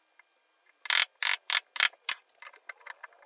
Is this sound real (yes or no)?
yes